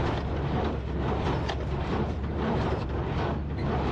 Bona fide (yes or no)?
yes